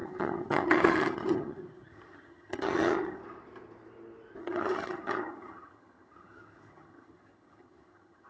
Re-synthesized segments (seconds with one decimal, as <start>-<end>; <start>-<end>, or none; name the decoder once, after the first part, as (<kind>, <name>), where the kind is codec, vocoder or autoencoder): 0.0-3.2 (vocoder, HiFi-GAN); 4.4-8.3